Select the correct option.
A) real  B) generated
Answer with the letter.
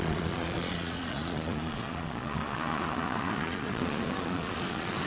B